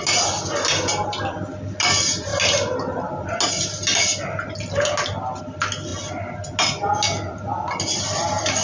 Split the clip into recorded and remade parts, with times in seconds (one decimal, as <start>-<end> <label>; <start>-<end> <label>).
0.0-8.6 recorded